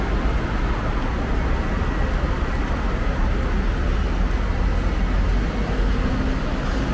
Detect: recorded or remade recorded